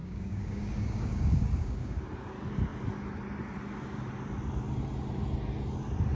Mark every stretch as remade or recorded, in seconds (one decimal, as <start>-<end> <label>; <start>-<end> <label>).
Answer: 0.0-2.0 remade; 2.0-6.1 recorded